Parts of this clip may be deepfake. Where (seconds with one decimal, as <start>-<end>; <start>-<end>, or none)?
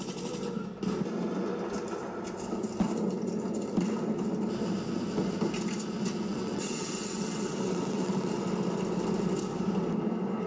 6.3-8.3